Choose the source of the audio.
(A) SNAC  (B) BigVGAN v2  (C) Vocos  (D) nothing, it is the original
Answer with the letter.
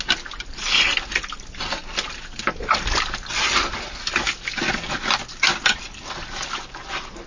D